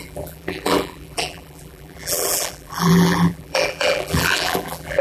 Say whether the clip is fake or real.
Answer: fake